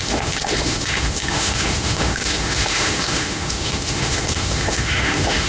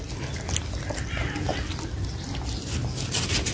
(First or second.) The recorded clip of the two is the second